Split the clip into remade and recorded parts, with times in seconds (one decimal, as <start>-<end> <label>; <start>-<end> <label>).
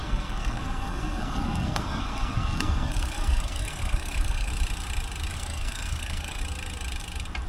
0.0-4.5 remade; 4.5-5.3 recorded; 5.3-6.4 remade; 6.4-7.5 recorded